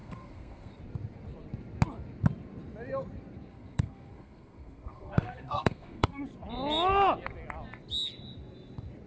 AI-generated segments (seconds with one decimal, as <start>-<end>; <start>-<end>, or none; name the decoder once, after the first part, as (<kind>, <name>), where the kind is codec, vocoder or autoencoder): 0.0-0.8 (codec, SNAC); 3.5-6.2